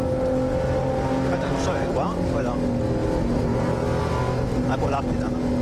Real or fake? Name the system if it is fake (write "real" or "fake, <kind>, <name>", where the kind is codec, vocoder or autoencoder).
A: real